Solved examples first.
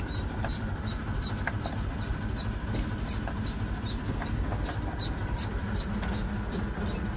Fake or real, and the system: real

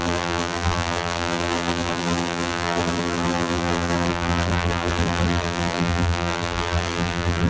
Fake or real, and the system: fake, vocoder, BigVGAN v2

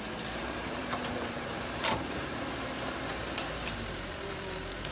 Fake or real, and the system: fake, vocoder, BigVGAN v2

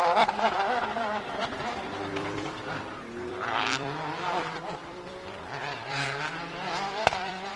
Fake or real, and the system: fake, vocoder, BigVGAN v2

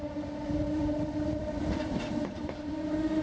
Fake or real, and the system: fake, vocoder, BigVGAN v2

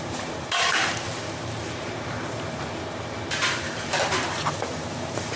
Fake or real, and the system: fake, vocoder, BigVGAN v2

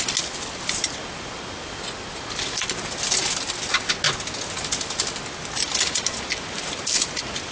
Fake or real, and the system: real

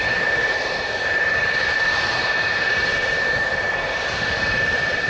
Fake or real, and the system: fake, vocoder, BigVGAN v2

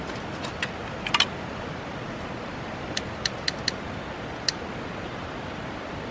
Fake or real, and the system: real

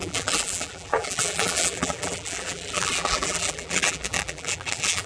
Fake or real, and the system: fake, vocoder, BigVGAN v2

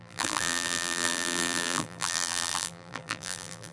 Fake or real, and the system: fake, vocoder, BigVGAN v2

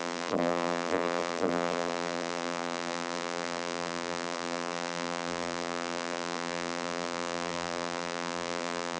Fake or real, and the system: fake, vocoder, BigVGAN v2